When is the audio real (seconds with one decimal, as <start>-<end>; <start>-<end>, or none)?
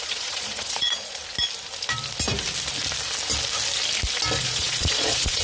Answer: 1.2-4.4